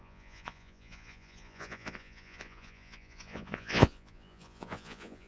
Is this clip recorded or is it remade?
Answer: remade